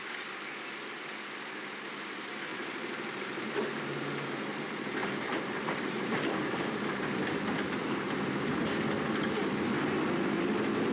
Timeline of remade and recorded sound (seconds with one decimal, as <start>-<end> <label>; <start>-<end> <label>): 0.0-2.5 recorded; 2.5-4.0 remade; 4.0-5.0 recorded; 5.0-8.6 remade; 8.6-10.9 recorded